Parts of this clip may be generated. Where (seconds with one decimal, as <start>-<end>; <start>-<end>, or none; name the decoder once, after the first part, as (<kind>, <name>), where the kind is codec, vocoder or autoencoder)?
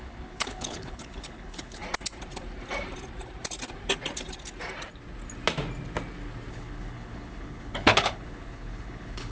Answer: 0.0-1.8 (codec, HILCodec); 6.5-9.3